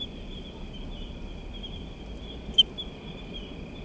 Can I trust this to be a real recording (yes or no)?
yes